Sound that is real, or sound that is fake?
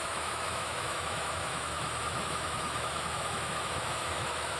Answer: fake